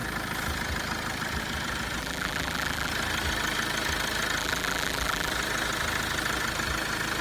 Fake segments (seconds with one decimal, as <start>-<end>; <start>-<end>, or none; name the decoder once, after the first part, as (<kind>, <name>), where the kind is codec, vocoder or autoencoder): 2.0-2.9 (vocoder, BigVGAN v2); 4.4-5.3